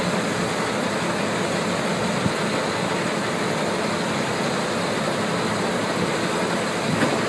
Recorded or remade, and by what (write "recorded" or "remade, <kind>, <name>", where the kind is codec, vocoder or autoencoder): recorded